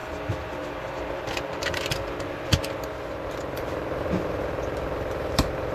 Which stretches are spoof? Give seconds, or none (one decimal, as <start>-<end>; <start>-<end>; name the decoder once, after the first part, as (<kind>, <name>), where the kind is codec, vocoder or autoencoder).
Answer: 0.0-5.7 (vocoder, BigVGAN v2)